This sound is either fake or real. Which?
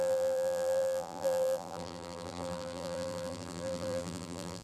fake